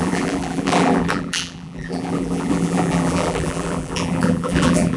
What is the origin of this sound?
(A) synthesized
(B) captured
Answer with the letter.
A